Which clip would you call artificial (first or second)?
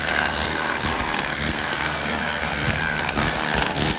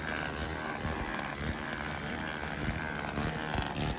first